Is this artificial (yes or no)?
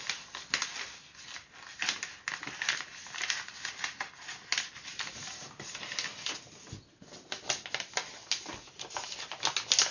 no